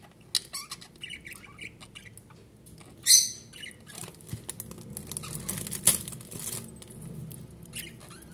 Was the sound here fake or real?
real